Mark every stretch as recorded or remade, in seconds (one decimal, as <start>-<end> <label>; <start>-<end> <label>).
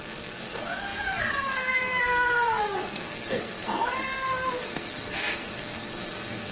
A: 0.0-6.5 remade